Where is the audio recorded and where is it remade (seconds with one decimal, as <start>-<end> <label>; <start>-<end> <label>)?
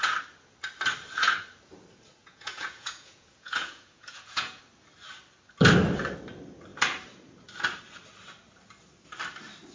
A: 0.0-2.2 recorded; 2.2-4.6 remade; 4.6-9.7 recorded